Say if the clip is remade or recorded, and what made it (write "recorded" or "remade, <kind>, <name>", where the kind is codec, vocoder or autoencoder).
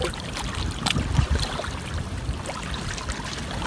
remade, vocoder, BigVGAN v2